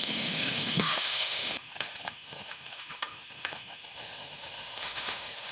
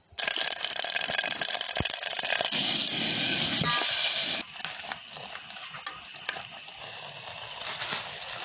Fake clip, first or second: first